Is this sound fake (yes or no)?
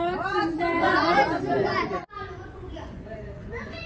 yes